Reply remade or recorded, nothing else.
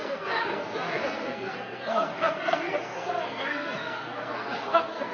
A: remade